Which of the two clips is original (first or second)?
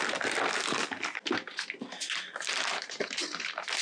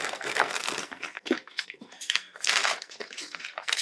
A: first